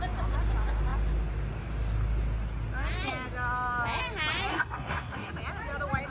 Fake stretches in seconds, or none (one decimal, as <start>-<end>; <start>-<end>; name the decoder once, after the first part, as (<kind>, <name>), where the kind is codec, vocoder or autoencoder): 4.5-5.3 (codec, SNAC)